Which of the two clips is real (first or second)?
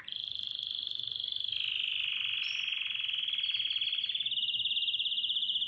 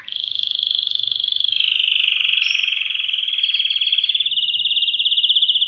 first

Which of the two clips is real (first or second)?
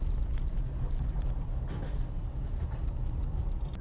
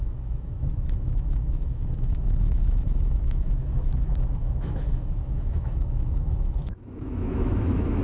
first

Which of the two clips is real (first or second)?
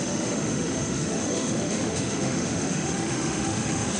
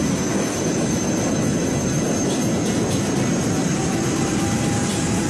second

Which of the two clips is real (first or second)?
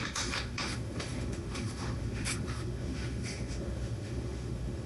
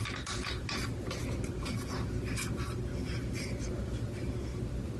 second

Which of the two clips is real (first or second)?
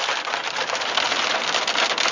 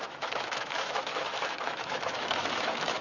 first